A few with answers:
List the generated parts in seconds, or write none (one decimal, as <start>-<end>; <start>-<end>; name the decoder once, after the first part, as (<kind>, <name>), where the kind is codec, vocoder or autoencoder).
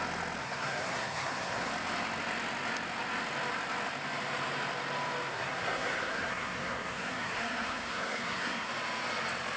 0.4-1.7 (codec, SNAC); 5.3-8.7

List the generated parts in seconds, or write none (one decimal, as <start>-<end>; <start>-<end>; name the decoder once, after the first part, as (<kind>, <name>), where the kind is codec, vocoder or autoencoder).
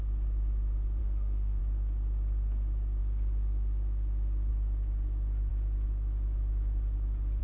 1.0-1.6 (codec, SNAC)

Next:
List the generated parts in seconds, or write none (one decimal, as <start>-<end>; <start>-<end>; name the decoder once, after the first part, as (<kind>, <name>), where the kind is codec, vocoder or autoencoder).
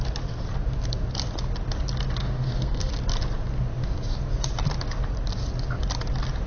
2.2-2.9 (codec, SNAC)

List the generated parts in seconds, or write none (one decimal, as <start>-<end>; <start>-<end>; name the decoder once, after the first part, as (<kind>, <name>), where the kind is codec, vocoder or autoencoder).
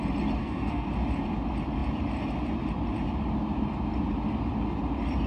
0.4-0.9 (codec, SNAC)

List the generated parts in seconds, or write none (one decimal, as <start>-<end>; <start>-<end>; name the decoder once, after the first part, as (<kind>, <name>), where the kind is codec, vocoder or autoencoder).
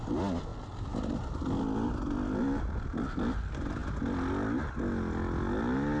none